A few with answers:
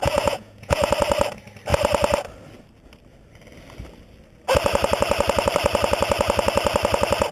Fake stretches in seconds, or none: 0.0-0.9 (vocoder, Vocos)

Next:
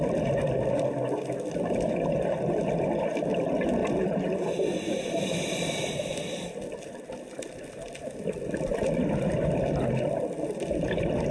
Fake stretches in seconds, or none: none